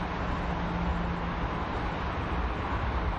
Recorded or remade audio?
recorded